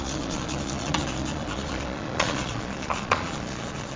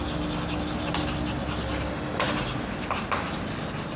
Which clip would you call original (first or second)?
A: second